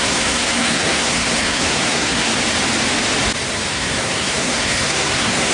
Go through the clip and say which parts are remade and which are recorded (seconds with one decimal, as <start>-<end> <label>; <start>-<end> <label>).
0.0-2.3 remade; 2.3-3.7 recorded; 3.7-5.5 remade